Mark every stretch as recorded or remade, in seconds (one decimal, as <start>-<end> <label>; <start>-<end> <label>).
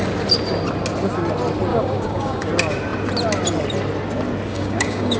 0.0-1.7 recorded; 1.7-2.5 remade; 2.5-4.5 recorded; 4.5-5.2 remade